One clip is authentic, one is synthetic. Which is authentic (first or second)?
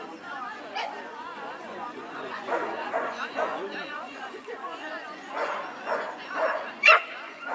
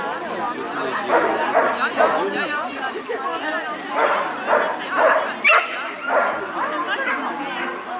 second